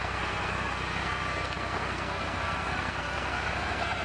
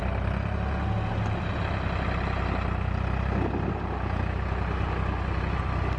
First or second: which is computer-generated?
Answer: first